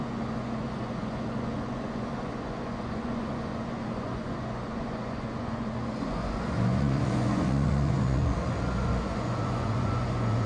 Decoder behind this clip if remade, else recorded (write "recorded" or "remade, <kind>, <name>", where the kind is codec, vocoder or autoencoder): remade, vocoder, Vocos